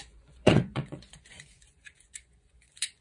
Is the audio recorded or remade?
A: remade